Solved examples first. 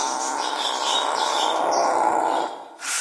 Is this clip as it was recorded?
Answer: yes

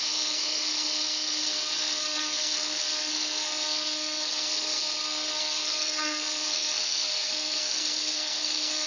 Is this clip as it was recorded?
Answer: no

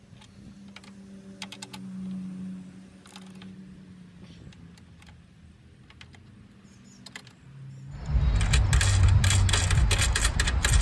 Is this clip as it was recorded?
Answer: yes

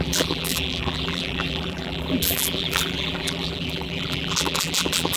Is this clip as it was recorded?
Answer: no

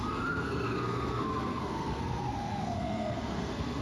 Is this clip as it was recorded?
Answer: no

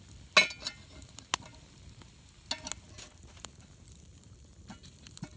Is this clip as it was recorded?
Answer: yes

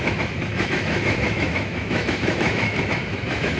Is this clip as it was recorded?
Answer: no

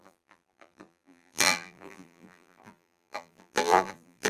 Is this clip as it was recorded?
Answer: no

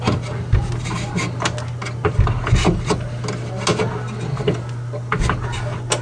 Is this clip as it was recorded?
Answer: yes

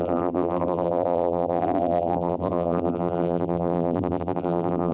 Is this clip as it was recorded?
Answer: no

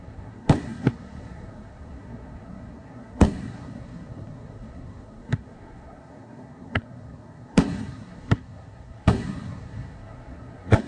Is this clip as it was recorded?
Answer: no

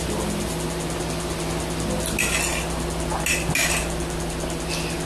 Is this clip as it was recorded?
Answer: yes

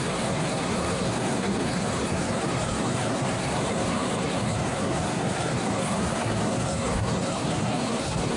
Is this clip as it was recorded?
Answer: no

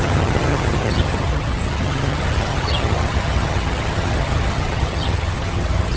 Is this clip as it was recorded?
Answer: no